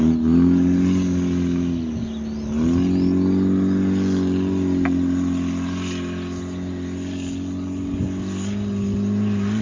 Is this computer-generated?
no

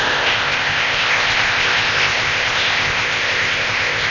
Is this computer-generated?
yes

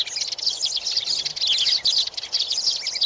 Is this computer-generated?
no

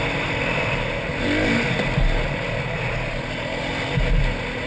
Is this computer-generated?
no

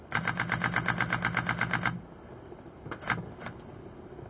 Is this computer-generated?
no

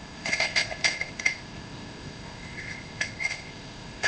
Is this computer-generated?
yes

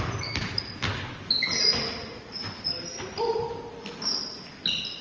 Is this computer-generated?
no